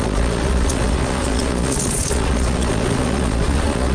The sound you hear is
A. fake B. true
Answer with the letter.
A